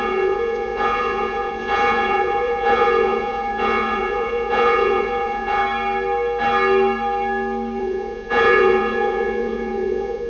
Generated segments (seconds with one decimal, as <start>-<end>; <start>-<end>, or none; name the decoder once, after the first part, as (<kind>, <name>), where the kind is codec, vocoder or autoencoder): 0.0-5.6 (vocoder, Vocos); 7.8-10.3